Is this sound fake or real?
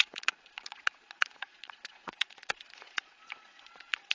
fake